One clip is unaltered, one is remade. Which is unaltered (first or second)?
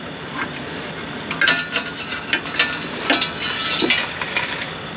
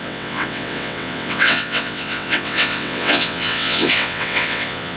first